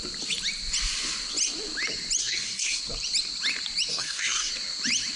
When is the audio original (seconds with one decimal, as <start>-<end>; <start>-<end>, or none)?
0.0-2.2; 2.8-3.9; 4.5-5.2